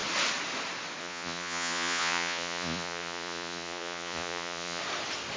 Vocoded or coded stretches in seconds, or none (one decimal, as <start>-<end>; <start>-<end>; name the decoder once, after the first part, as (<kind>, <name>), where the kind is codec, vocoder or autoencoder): 1.0-4.8 (vocoder, Vocos)